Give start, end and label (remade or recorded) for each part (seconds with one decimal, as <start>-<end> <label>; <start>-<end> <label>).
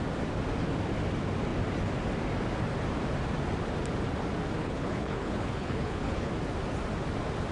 0.0-4.6 recorded; 4.6-6.3 remade; 6.3-7.5 recorded